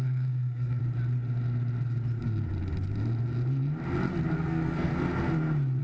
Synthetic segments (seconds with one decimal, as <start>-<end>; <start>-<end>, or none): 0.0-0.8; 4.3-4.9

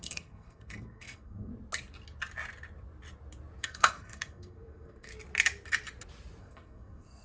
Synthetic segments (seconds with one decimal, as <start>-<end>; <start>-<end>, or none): 0.0-1.5; 3.6-5.1; 6.4-7.2

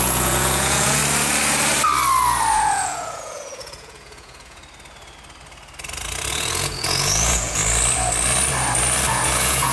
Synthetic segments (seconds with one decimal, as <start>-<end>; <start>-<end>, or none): 0.0-1.0; 2.5-4.6; 6.3-7.6; 9.1-9.7

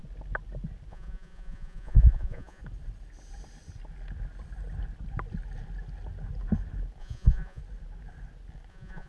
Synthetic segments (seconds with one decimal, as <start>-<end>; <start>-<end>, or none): 0.9-2.6; 7.0-7.6; 8.7-9.1

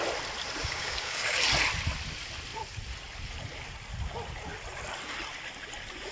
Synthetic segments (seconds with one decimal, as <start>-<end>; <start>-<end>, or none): 0.6-1.4

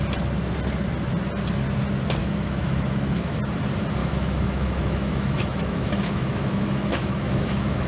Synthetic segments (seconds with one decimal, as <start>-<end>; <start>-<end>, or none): 2.2-3.4; 4.0-7.9

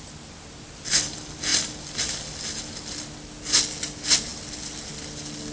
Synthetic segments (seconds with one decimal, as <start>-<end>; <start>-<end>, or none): none

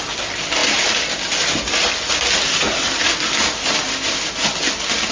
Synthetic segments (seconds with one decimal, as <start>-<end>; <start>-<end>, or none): none